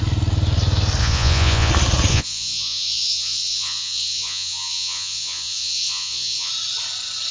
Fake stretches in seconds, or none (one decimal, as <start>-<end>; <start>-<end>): 1.0-1.7; 2.1-6.5